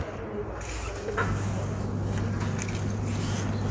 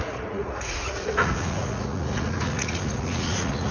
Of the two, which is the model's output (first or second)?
second